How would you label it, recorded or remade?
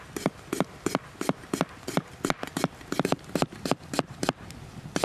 recorded